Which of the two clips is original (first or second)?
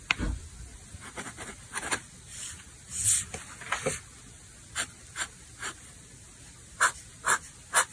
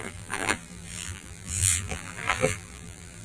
first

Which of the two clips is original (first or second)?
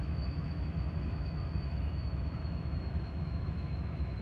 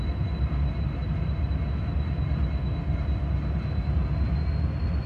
second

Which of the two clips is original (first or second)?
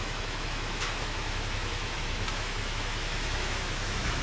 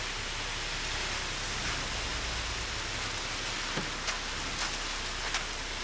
second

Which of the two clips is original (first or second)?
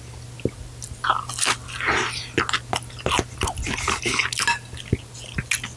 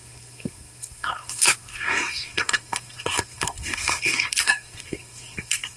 first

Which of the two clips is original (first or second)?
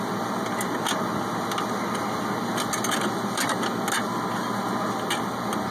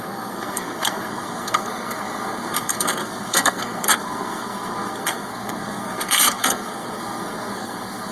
first